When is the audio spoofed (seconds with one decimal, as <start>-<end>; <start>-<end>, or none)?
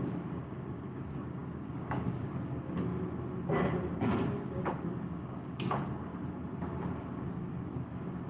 0.0-2.9; 3.9-6.1; 7.3-8.3